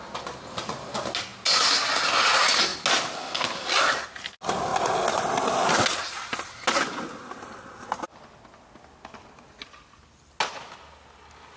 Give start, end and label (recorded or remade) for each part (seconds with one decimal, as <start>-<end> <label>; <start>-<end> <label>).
0.0-11.6 recorded